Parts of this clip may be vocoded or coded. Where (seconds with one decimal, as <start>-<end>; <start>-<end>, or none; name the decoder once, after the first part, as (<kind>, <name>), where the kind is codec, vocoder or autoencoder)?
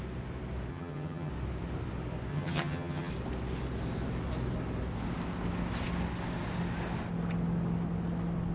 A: 0.7-1.3 (vocoder, HiFi-GAN); 2.3-3.1